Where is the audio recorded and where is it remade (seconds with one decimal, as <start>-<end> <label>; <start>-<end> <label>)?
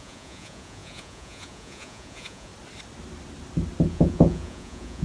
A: 0.0-2.5 remade; 2.5-3.9 recorded; 3.9-5.0 remade